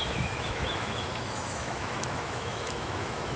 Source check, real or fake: fake